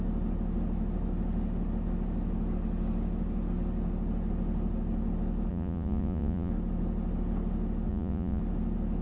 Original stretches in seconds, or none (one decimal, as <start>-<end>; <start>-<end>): 0.0-5.5; 6.5-7.9; 8.4-9.0